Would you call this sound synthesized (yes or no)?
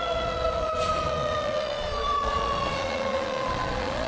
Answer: yes